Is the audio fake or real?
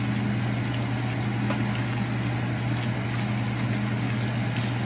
real